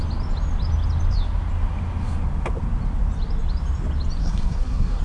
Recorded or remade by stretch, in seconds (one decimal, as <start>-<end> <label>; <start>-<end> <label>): 0.0-4.2 recorded; 4.2-5.0 remade